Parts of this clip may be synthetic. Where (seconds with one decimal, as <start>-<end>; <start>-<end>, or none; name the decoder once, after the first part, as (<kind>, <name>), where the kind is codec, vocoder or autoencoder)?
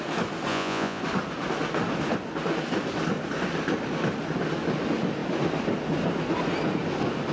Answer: 0.5-1.0 (vocoder, Vocos)